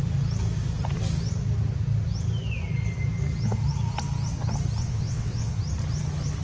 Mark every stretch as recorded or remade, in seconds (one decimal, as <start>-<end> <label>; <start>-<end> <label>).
0.0-4.8 recorded; 4.8-5.6 remade; 5.6-6.4 recorded